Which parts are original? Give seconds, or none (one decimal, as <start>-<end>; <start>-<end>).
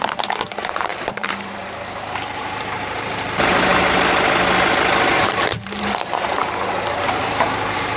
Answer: 3.7-5.2; 6.4-7.0